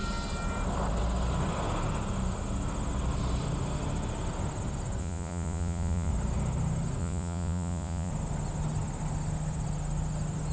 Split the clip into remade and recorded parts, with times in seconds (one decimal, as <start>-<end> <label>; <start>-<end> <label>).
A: 0.0-5.0 recorded; 5.0-6.1 remade; 6.1-7.0 recorded; 7.0-8.1 remade; 8.1-10.5 recorded